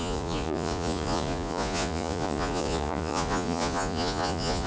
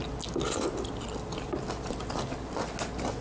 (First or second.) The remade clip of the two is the first